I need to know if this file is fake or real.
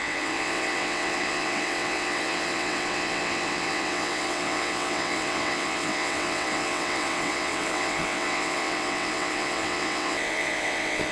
fake